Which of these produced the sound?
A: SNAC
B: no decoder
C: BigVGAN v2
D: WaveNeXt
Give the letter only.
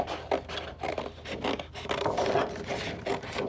B